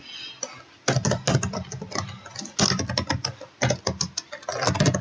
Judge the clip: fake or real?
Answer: real